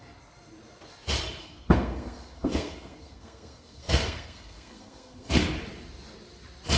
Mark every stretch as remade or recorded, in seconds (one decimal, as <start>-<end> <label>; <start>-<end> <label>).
0.0-1.4 recorded; 1.4-5.5 remade; 5.5-6.8 recorded